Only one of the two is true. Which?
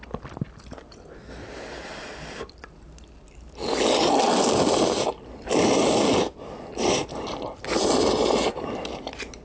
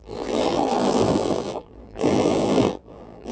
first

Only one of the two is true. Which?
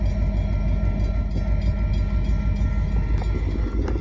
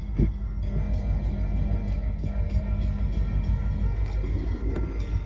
first